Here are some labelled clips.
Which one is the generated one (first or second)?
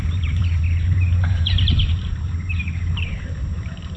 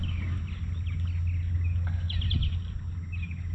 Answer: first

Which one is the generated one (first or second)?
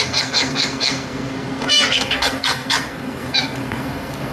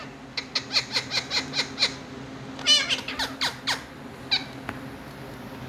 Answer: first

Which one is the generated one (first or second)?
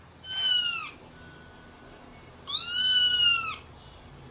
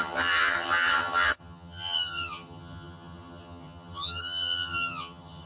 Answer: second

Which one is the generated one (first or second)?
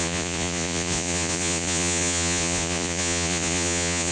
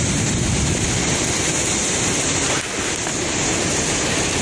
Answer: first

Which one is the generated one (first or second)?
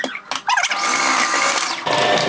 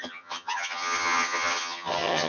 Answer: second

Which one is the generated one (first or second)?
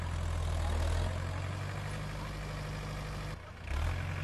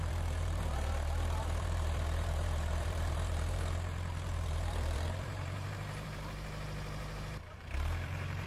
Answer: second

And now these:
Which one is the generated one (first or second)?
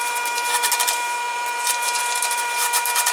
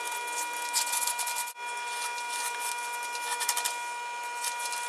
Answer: first